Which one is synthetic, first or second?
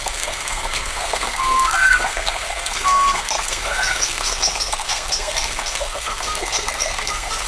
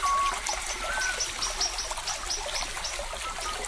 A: first